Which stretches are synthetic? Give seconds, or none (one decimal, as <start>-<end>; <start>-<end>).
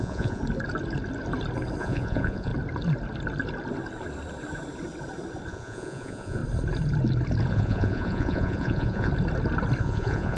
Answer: 0.0-0.4; 1.8-2.5; 5.5-6.4; 7.5-9.1; 9.8-10.4